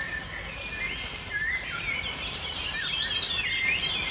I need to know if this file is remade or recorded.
recorded